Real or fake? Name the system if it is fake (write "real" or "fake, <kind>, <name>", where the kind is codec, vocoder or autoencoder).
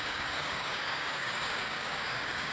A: fake, codec, DAC